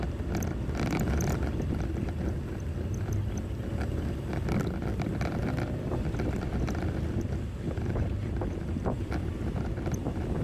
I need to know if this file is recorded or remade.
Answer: remade